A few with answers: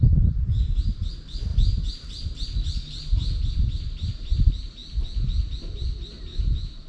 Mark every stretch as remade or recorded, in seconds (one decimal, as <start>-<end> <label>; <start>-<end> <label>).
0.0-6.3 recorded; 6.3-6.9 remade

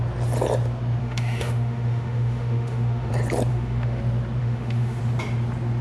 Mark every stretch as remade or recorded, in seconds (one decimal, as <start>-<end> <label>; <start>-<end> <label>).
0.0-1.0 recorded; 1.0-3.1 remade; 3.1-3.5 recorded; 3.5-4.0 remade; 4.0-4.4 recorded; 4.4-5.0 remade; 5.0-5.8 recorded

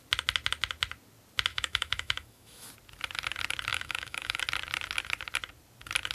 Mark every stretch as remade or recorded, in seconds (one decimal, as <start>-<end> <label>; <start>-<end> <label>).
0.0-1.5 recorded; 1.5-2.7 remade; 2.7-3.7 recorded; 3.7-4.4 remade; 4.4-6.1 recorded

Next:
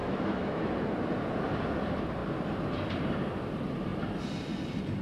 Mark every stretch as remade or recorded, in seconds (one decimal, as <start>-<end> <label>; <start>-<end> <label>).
0.0-0.7 remade; 0.7-5.0 recorded

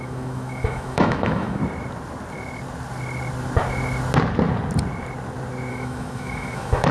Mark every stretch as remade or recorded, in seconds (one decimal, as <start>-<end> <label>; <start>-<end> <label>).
0.0-1.6 remade; 1.6-5.7 recorded; 5.7-6.9 remade

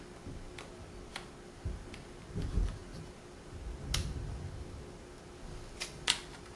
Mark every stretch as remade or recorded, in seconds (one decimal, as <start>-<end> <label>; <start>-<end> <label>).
0.0-6.6 recorded

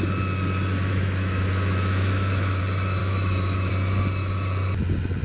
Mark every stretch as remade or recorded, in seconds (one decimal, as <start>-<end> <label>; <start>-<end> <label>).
0.0-0.9 recorded; 0.9-2.6 remade; 2.6-3.0 recorded; 3.0-3.7 remade; 3.7-5.2 recorded

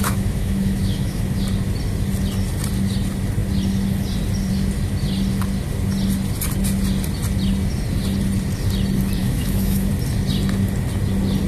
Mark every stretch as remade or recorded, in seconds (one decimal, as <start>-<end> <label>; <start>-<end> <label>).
0.0-1.2 remade; 1.2-9.2 recorded; 9.2-9.9 remade; 9.9-11.5 recorded